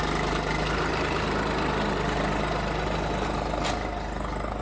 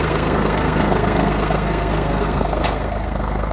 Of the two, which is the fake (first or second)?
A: second